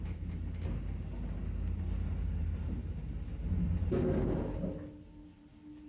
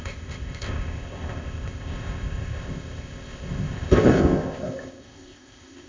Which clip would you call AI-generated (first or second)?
second